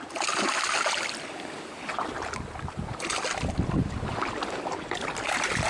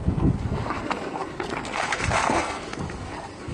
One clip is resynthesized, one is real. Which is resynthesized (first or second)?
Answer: second